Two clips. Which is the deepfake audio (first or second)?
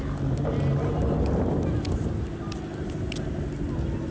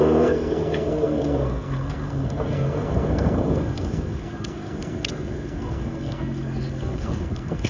second